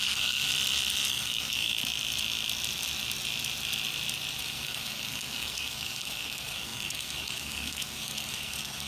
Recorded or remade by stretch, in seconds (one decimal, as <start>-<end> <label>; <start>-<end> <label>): 0.0-0.5 remade; 0.5-1.1 recorded; 1.1-1.8 remade; 1.8-4.4 recorded; 4.4-8.9 remade